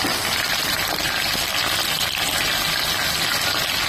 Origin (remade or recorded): recorded